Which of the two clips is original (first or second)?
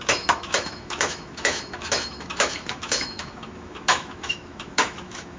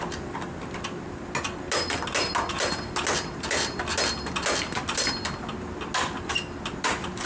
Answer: second